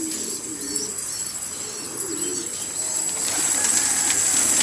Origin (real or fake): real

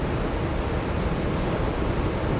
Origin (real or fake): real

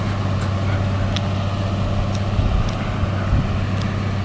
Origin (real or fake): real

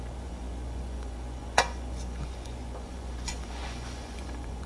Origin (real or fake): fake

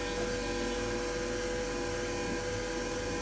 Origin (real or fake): real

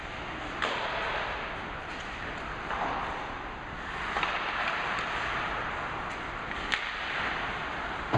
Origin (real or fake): real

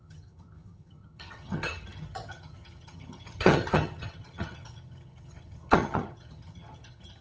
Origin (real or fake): fake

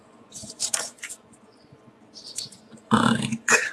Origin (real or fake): fake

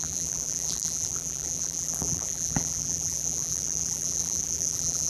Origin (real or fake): fake